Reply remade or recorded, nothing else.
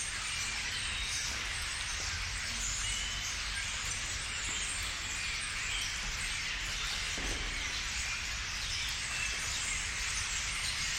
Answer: recorded